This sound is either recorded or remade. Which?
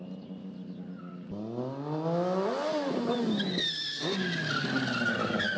recorded